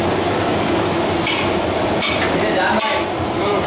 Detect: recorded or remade recorded